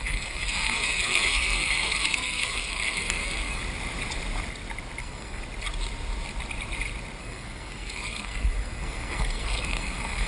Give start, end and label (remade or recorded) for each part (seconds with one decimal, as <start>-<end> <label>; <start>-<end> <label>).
0.0-3.6 remade; 3.6-5.0 recorded; 5.0-5.4 remade; 5.4-7.2 recorded; 7.2-10.3 remade